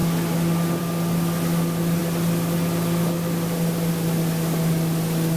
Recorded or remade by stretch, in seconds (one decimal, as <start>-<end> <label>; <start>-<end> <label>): 0.0-5.4 recorded